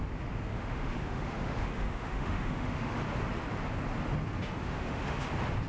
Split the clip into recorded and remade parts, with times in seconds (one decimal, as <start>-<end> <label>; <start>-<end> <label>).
0.0-0.5 recorded; 0.5-3.0 remade; 3.0-4.6 recorded; 4.6-5.2 remade; 5.2-5.7 recorded